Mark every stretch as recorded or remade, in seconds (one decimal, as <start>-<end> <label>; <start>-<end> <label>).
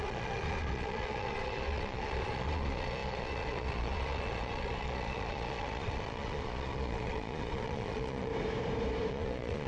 0.0-8.3 remade; 8.3-9.1 recorded; 9.1-9.7 remade